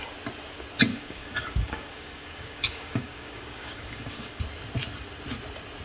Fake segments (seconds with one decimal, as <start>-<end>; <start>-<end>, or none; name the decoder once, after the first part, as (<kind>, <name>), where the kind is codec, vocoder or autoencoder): 0.9-4.4 (codec, DAC)

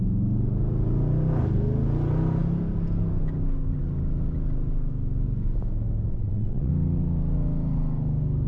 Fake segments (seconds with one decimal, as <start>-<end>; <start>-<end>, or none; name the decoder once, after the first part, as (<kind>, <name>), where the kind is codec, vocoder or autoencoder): 6.1-6.7 (vocoder, WaveNeXt)